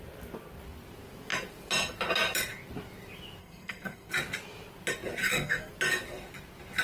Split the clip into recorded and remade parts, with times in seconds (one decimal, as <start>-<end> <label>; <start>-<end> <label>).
0.0-3.4 recorded; 3.4-4.1 remade; 4.1-5.2 recorded; 5.2-5.7 remade; 5.7-6.8 recorded